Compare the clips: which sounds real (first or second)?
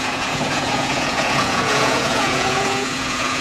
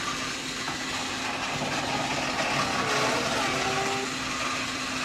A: second